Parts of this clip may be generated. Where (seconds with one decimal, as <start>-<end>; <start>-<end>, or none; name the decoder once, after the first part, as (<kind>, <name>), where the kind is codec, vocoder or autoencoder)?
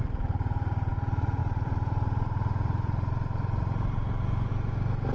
1.4-4.5 (vocoder, BigVGAN v2)